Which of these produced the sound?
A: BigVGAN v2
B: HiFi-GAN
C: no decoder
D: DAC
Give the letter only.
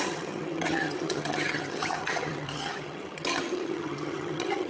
B